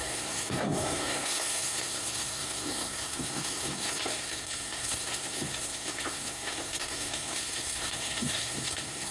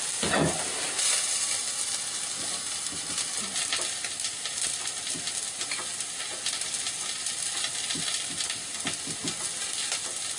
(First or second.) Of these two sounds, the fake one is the first